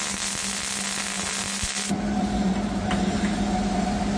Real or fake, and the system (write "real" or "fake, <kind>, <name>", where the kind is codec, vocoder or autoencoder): real